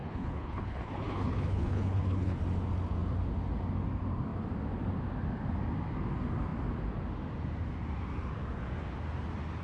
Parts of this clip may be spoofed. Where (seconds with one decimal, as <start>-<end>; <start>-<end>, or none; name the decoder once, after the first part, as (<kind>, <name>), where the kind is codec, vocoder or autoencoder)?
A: 0.0-2.4 (codec, HILCodec)